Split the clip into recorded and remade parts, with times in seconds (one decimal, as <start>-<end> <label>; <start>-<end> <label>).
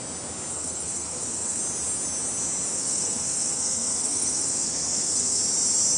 0.0-0.5 recorded; 0.5-1.6 remade; 1.6-2.7 recorded; 2.7-5.4 remade; 5.4-6.0 recorded